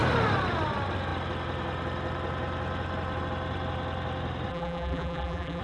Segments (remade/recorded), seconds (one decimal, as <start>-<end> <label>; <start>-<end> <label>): 0.0-4.5 recorded; 4.5-5.6 remade